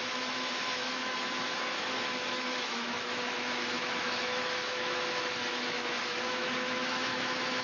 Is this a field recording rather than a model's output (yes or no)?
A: no